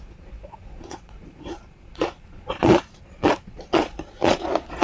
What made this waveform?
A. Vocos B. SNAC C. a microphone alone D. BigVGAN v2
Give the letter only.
A